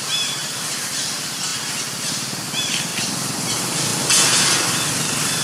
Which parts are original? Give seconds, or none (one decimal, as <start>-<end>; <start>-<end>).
2.9-3.4; 3.9-4.7